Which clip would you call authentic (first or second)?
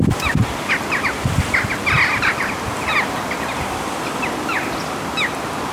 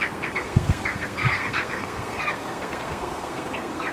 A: first